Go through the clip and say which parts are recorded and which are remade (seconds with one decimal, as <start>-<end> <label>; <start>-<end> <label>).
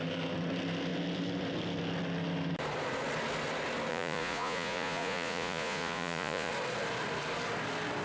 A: 0.0-3.9 recorded; 3.9-6.5 remade; 6.5-8.0 recorded